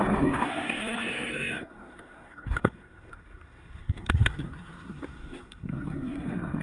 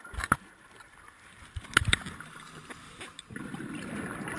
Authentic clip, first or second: second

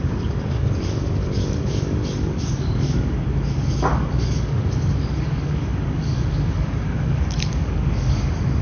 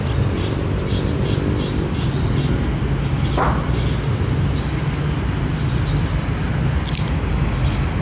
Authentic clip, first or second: second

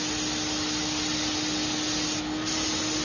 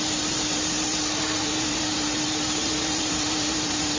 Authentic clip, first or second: first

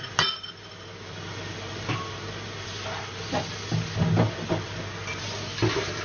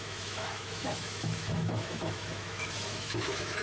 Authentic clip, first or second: first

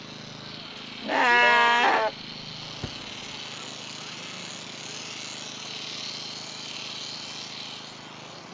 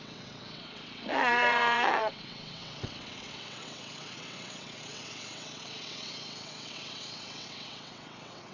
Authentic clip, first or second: first